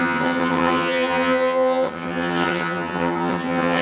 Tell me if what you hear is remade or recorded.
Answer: remade